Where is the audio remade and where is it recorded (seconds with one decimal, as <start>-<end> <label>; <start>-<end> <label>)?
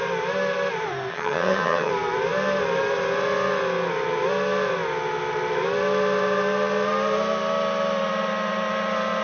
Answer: 0.0-1.1 recorded; 1.1-1.9 remade; 1.9-9.2 recorded